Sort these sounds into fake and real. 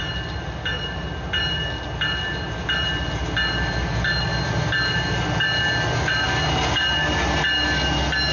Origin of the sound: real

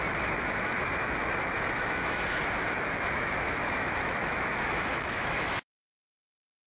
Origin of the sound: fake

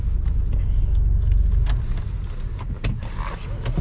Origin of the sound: real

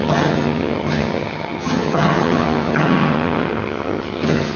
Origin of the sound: fake